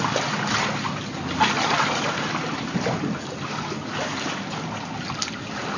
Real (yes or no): yes